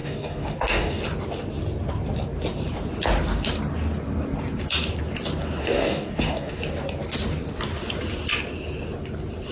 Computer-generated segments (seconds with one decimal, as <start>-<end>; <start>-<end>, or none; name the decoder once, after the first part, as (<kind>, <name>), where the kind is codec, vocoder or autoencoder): 0.0-1.0 (codec, DAC); 5.6-6.6